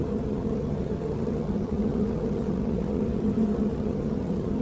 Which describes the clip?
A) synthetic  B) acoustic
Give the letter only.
A